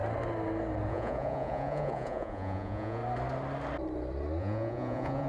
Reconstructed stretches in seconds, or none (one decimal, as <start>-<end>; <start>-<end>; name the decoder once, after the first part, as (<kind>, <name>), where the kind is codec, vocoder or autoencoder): 0.9-3.0 (vocoder, Vocos); 4.4-5.3